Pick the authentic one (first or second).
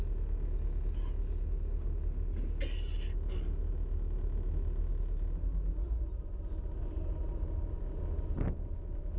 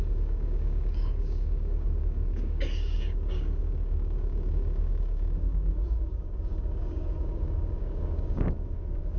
first